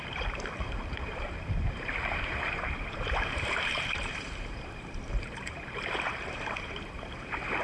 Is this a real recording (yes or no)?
no